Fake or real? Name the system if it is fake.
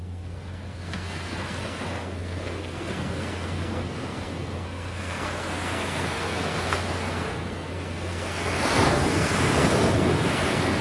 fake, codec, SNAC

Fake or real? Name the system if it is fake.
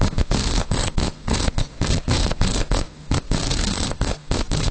fake, codec, SNAC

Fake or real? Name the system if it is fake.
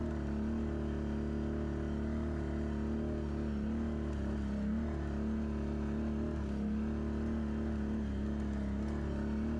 real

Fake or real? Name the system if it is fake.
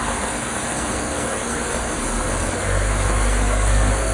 fake, codec, SNAC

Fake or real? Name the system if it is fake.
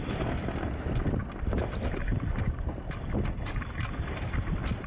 real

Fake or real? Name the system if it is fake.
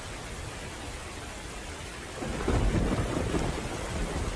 real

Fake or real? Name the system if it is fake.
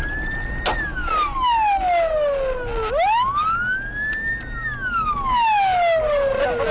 real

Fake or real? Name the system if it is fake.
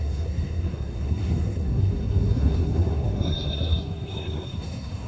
fake, codec, SNAC